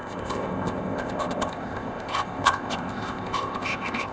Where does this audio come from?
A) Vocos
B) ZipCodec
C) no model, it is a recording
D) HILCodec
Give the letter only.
B